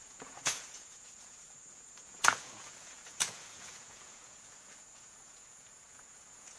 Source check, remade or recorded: remade